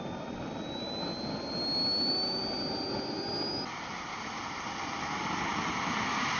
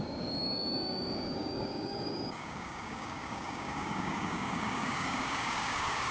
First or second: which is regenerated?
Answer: second